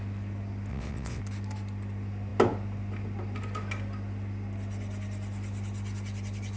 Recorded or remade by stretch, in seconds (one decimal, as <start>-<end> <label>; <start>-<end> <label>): 0.0-0.7 recorded; 0.7-1.2 remade; 1.2-6.6 recorded